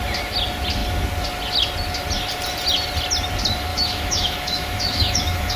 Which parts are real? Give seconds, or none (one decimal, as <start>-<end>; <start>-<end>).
0.0-3.7